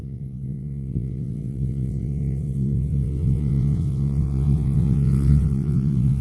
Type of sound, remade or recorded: remade